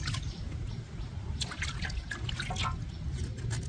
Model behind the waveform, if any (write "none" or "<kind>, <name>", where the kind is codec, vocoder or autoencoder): none